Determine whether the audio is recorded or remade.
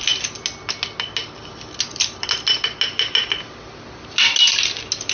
recorded